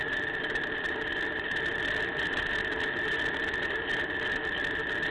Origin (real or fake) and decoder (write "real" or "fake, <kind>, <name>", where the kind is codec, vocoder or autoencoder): real